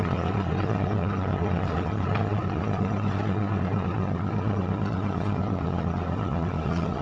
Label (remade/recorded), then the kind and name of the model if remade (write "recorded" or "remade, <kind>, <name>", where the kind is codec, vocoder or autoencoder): remade, vocoder, Vocos